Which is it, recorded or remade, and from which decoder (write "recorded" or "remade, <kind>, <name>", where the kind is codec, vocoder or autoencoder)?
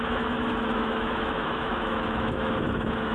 remade, autoencoder, DAC-VAE